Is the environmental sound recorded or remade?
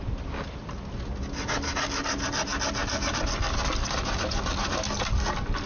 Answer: recorded